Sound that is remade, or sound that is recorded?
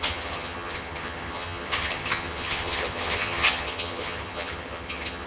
remade